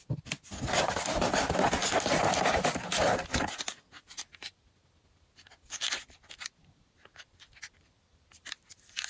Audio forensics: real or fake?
real